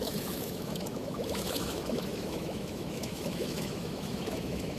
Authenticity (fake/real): fake